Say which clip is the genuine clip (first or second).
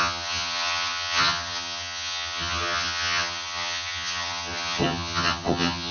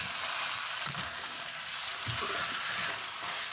second